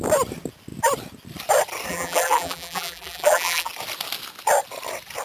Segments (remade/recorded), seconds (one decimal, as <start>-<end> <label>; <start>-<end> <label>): 0.0-1.9 recorded; 1.9-3.7 remade; 3.7-5.2 recorded